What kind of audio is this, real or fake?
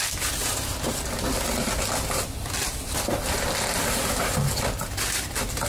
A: real